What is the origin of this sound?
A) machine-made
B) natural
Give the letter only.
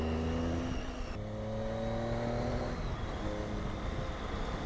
B